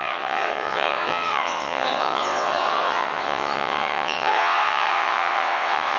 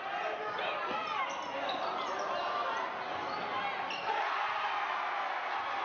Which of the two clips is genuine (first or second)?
second